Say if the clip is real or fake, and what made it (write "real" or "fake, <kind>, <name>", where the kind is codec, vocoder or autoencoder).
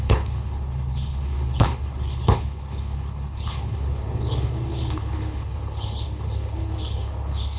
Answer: fake, codec, HILCodec